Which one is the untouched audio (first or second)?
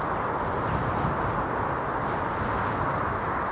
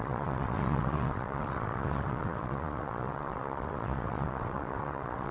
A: first